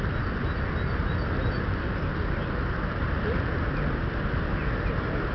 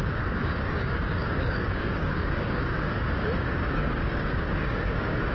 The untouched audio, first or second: first